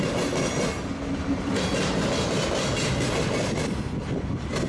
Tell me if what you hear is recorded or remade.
recorded